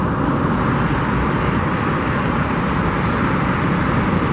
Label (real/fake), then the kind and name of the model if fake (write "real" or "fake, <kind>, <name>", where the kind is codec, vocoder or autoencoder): real